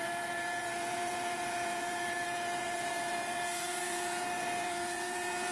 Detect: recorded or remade remade